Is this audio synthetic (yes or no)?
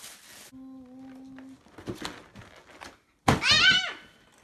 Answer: no